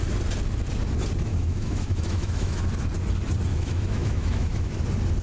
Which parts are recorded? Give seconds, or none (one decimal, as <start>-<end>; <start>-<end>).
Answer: 0.0-1.3; 2.6-3.5; 4.8-5.2